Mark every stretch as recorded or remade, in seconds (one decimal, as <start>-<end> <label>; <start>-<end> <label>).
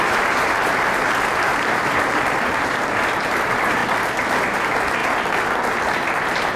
0.0-3.8 remade; 3.8-4.4 recorded; 4.4-5.0 remade; 5.0-5.8 recorded; 5.8-6.6 remade